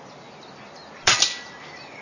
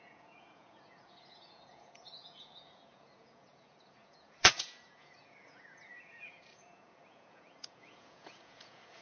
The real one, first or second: first